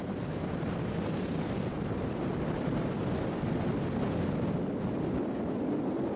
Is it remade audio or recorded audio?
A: recorded